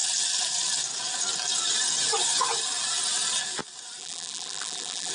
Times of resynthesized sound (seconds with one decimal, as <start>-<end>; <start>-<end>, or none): 4.0-5.1